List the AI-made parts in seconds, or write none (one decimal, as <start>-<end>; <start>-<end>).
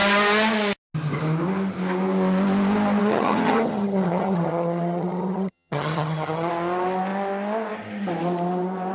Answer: 3.0-6.5